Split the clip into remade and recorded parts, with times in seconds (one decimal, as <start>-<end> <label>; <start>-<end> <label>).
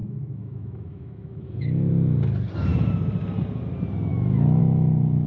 0.0-1.9 remade; 1.9-4.1 recorded; 4.1-4.6 remade; 4.6-5.3 recorded